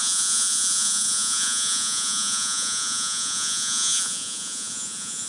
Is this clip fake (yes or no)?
yes